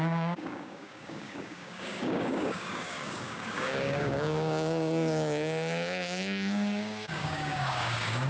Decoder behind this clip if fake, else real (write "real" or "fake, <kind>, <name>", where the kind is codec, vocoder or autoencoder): fake, codec, DAC